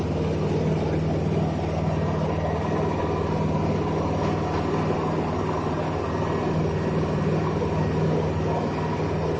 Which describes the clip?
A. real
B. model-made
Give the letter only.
A